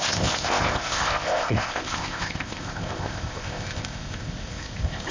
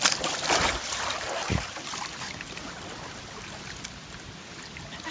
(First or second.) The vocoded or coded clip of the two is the first